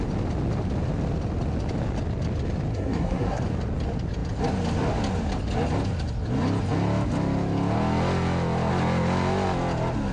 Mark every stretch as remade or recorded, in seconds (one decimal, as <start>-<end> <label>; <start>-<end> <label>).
0.0-2.7 recorded; 2.7-3.4 remade; 3.4-10.1 recorded